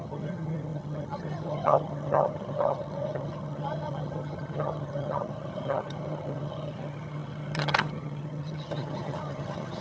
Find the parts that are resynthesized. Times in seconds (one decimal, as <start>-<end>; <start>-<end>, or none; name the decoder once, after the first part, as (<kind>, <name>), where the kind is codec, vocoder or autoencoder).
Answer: 0.0-9.8 (vocoder, HiFi-GAN)